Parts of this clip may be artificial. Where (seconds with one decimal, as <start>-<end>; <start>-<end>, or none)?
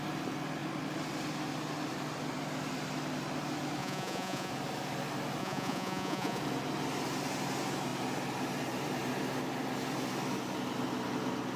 3.8-4.5; 5.4-6.4